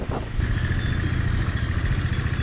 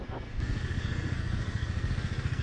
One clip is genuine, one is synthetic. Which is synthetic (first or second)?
second